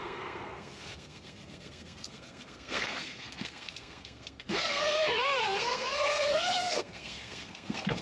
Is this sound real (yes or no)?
no